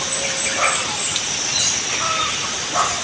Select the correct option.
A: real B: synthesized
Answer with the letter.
A